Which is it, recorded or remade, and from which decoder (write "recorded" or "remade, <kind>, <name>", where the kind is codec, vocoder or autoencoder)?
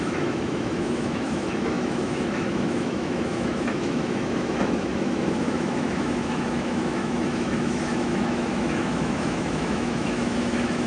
remade, autoencoder, DAC-VAE